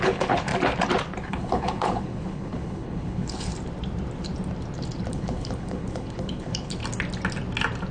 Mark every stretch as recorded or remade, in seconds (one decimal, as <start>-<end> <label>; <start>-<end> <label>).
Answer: 0.0-0.5 remade; 0.5-1.3 recorded; 1.3-3.5 remade; 3.5-5.1 recorded; 5.1-6.8 remade; 6.8-7.9 recorded